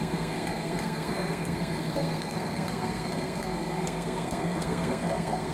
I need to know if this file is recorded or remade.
remade